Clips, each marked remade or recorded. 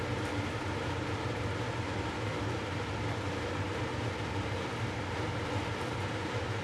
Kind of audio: recorded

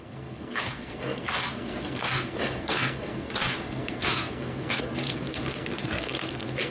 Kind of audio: remade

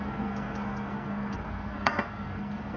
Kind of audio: remade